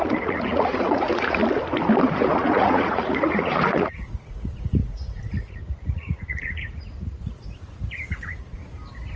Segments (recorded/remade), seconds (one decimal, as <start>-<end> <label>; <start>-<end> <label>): 0.0-1.4 remade; 1.4-2.0 recorded; 2.0-8.6 remade; 8.6-9.2 recorded